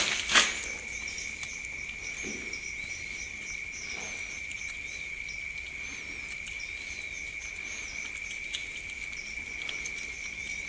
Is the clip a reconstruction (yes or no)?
no